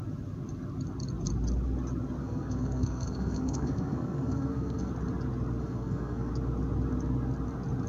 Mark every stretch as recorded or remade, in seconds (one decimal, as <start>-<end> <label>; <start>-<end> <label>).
0.0-2.2 recorded; 2.2-4.9 remade; 4.9-5.6 recorded; 5.6-6.3 remade; 6.3-7.9 recorded